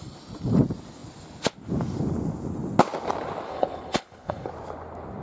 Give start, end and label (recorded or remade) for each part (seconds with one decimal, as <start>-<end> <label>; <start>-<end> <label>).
0.0-3.5 recorded; 3.5-4.5 remade; 4.5-5.2 recorded